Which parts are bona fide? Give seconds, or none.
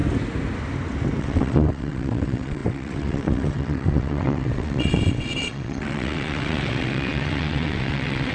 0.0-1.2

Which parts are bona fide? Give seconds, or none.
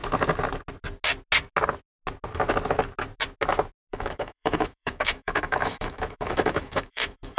0.0-3.9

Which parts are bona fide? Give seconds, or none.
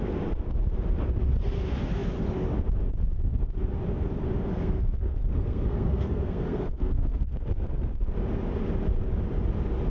0.0-4.5; 7.9-9.9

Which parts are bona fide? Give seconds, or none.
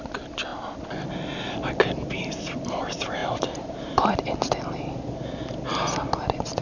0.0-3.2; 4.1-6.6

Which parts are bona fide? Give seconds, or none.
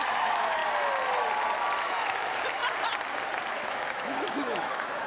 0.6-1.8; 2.6-3.5